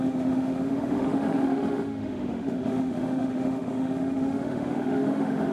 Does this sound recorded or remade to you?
remade